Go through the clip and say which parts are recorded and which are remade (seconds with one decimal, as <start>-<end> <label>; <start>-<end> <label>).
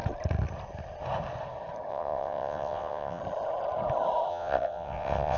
0.0-1.9 recorded; 1.9-3.2 remade; 3.2-4.3 recorded; 4.3-5.4 remade